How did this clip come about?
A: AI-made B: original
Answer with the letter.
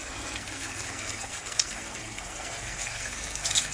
A